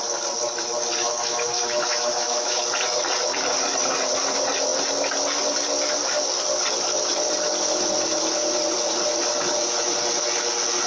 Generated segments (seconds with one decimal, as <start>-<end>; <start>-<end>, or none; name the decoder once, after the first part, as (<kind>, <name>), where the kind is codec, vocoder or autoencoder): 1.0-2.6 (autoencoder, DAC-VAE)